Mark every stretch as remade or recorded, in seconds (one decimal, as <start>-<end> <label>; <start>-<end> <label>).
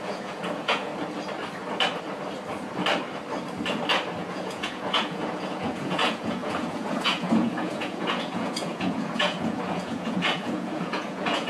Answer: 0.0-0.9 remade; 0.9-4.2 recorded; 4.2-11.5 remade